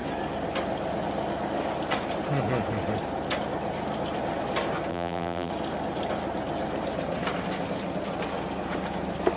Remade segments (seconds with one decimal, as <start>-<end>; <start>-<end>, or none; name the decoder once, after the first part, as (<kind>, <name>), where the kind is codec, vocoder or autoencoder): 4.9-5.5 (vocoder, BigVGAN v2)